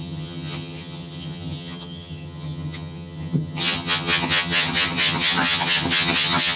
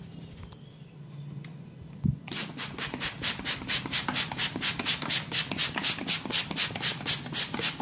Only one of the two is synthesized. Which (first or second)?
first